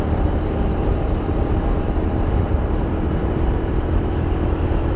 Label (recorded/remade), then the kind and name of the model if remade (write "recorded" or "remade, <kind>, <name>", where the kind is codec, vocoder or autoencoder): remade, vocoder, BigVGAN v2